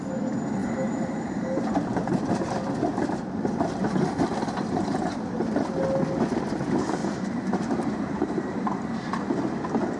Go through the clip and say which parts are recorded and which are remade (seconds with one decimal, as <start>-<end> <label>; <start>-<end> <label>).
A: 0.0-0.6 recorded; 0.6-3.8 remade; 3.8-7.0 recorded; 7.0-9.1 remade; 9.1-10.0 recorded